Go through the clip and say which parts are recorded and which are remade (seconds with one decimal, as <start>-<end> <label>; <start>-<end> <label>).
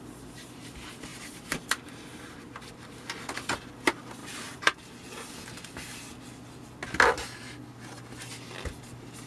0.0-1.1 recorded; 1.1-2.9 remade; 2.9-4.2 recorded; 4.2-4.8 remade; 4.8-9.3 recorded